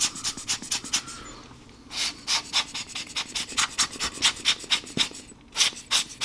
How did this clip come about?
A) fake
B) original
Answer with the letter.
B